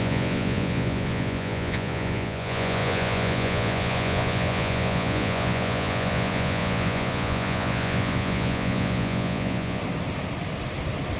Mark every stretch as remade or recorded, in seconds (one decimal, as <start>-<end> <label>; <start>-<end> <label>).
0.0-9.8 remade; 9.8-11.2 recorded